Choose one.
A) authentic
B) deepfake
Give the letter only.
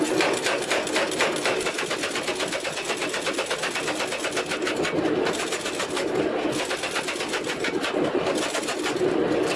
A